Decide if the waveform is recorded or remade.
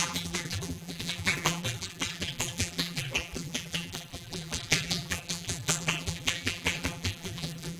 remade